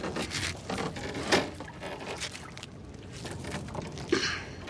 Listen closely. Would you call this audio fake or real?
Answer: real